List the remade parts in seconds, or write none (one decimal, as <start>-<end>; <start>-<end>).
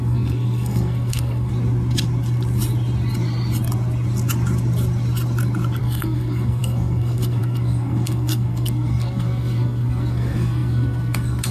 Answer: 0.0-1.5; 5.8-11.5